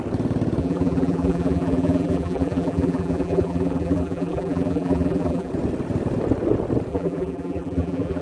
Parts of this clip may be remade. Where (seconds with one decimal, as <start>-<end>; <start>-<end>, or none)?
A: 0.6-5.5; 6.9-8.2